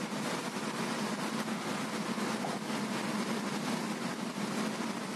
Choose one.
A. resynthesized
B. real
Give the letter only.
B